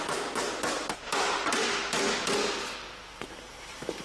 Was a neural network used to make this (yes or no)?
no